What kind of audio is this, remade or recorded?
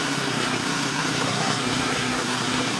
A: remade